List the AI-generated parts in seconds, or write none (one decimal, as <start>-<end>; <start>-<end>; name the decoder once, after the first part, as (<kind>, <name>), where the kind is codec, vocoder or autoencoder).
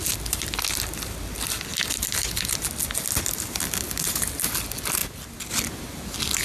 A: none